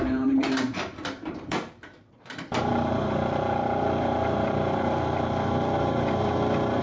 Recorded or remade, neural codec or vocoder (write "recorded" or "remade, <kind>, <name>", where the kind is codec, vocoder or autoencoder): remade, vocoder, BigVGAN v2